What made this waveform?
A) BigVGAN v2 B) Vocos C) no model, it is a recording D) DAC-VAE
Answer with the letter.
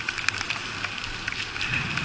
C